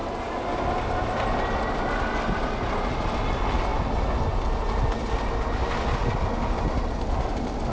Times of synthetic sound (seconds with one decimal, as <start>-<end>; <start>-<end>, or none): none

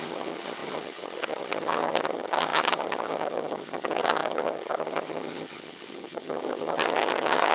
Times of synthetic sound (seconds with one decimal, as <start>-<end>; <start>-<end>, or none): 0.0-7.5

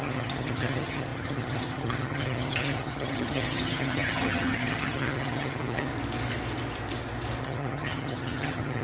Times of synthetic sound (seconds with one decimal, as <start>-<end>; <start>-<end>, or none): 0.0-5.9; 7.4-8.8

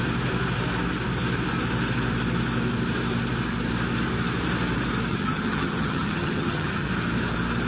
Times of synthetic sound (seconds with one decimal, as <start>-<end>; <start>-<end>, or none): 5.1-6.9

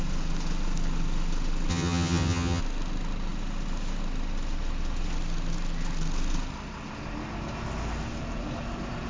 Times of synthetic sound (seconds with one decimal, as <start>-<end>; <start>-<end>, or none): 1.7-2.6

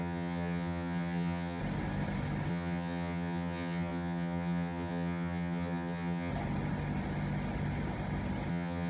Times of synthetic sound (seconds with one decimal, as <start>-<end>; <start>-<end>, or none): 0.0-1.6; 2.5-6.3; 8.5-8.9

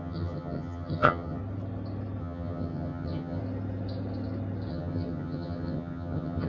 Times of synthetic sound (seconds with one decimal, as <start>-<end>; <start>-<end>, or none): 0.0-1.4; 2.2-3.4; 4.7-6.5

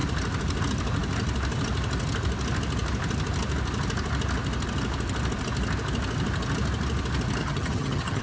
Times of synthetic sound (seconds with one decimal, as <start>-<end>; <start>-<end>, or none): 7.4-8.2